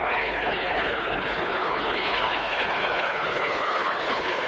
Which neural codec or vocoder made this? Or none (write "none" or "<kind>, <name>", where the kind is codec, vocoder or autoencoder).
codec, HILCodec